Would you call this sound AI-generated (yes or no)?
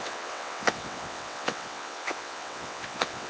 yes